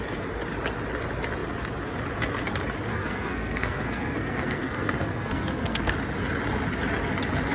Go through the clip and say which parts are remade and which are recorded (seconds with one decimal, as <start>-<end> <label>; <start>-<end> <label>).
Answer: 0.0-2.9 recorded; 2.9-5.9 remade; 5.9-7.5 recorded